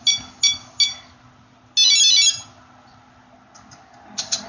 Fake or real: real